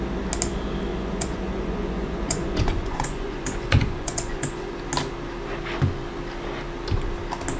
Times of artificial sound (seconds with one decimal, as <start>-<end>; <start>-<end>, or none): 0.9-4.7